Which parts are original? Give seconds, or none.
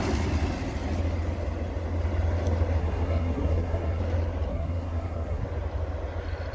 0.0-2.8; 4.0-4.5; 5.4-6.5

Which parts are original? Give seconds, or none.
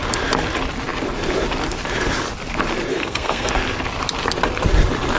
0.0-2.9; 3.5-5.2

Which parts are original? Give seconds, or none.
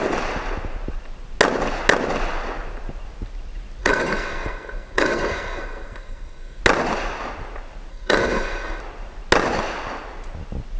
0.0-3.8; 6.6-7.9; 8.8-10.8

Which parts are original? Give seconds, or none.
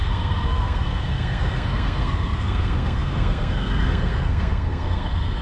none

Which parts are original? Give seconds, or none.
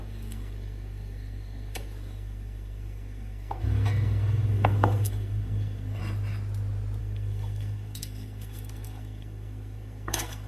6.0-7.0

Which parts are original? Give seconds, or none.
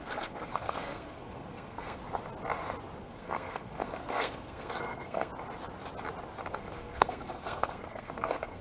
2.0-3.0; 5.3-6.5